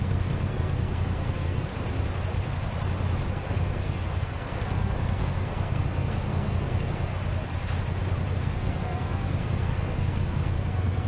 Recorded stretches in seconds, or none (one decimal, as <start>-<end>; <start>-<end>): 1.7-3.3; 7.1-8.4